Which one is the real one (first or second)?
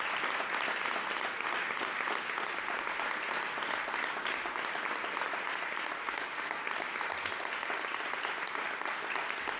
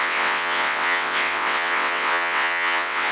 first